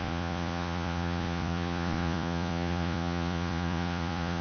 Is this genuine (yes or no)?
no